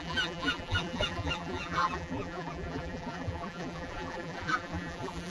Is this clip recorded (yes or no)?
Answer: no